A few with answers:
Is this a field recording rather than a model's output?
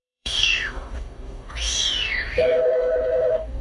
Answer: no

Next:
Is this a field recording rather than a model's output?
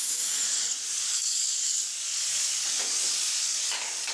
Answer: no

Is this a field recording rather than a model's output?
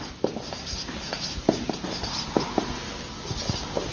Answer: yes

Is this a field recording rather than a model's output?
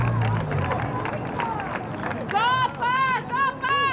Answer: yes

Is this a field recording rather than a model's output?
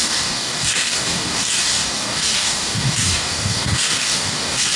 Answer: no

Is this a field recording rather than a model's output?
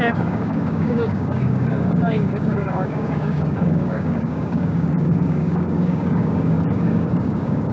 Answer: no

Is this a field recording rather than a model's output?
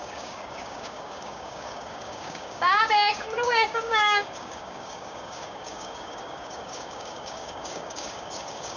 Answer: no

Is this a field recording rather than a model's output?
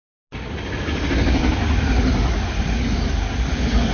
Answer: yes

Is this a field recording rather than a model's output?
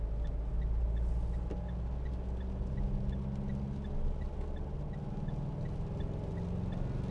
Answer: yes